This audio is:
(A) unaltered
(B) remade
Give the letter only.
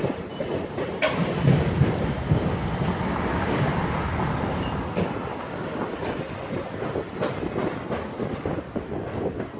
A